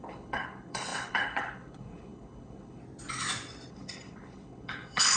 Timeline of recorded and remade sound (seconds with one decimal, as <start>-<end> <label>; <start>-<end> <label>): 0.0-2.8 remade; 2.8-3.7 recorded; 3.7-5.2 remade